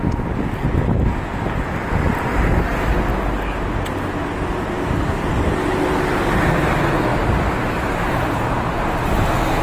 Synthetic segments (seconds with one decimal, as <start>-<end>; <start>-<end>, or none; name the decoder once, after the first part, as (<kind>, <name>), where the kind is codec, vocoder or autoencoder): 7.1-8.6 (vocoder, BigVGAN v2)